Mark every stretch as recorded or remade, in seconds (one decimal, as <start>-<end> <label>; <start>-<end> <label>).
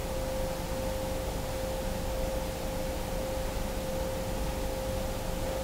0.0-5.6 recorded